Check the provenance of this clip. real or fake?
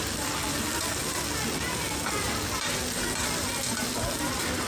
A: real